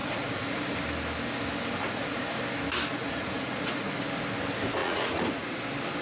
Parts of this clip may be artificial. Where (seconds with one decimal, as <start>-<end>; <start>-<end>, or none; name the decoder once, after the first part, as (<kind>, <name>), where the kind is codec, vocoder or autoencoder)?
0.0-0.6 (vocoder, Vocos); 1.8-2.4; 2.9-4.0; 4.8-5.6